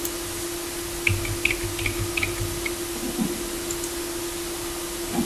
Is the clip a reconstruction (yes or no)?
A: no